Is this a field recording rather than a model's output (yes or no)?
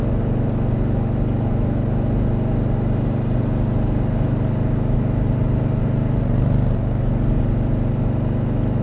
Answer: yes